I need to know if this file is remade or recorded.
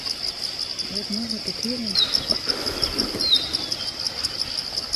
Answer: recorded